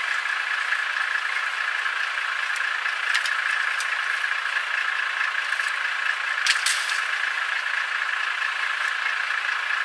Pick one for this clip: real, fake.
real